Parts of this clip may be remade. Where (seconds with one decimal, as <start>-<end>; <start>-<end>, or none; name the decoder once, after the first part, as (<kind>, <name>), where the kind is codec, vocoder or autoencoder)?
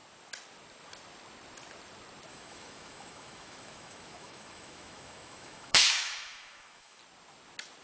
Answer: 2.3-7.0 (autoencoder, DAC-VAE)